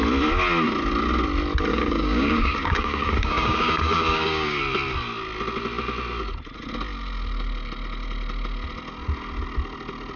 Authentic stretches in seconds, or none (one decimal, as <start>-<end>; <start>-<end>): 0.0-1.7; 4.6-10.2